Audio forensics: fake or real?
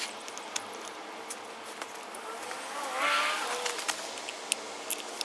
real